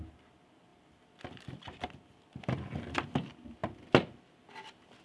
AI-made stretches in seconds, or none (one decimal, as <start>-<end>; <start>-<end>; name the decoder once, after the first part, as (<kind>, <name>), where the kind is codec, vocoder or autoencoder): none